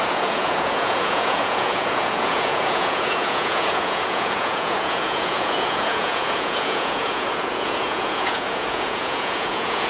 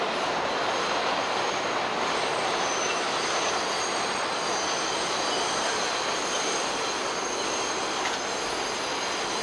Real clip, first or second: second